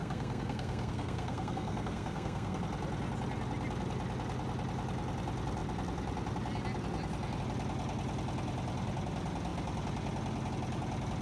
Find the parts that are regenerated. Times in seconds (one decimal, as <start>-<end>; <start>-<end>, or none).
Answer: 0.0-2.6